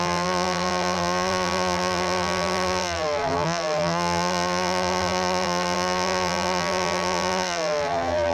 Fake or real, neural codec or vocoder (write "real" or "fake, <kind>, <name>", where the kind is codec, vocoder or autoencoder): fake, vocoder, BigVGAN v2